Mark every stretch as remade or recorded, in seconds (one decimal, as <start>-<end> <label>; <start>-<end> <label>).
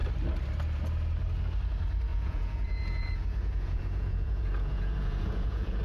0.0-2.1 recorded; 2.1-5.8 remade